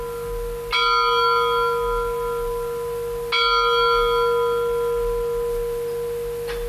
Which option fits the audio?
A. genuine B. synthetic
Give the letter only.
A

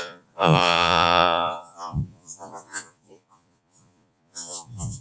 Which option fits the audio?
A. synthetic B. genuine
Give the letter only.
A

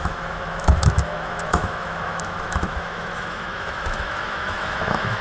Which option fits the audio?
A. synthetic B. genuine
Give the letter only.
A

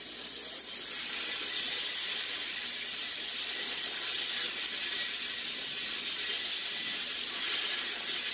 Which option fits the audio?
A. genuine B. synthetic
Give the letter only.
A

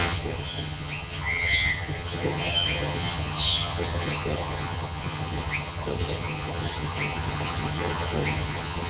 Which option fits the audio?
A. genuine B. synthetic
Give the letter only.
B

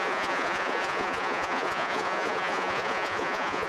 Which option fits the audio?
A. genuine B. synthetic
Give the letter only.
B